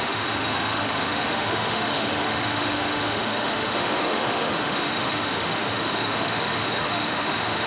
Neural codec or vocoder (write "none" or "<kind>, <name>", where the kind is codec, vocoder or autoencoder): autoencoder, DAC-VAE